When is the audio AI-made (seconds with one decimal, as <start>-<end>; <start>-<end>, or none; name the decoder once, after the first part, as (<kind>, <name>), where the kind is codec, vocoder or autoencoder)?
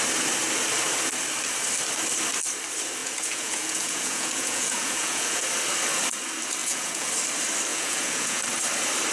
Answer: 3.0-5.4 (vocoder, Vocos); 6.6-7.1; 7.7-8.4